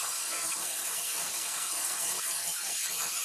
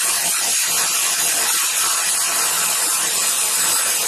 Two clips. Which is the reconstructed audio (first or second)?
first